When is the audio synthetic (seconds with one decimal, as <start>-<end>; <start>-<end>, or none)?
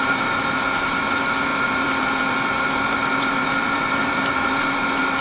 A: 0.0-5.2